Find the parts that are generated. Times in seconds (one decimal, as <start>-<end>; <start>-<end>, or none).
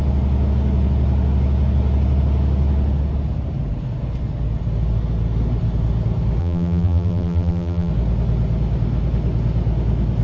6.4-7.9